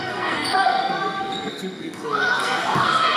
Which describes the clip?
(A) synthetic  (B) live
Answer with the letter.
A